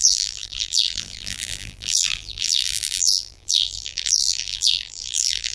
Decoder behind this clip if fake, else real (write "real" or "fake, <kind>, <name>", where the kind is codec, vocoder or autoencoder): fake, vocoder, BigVGAN v2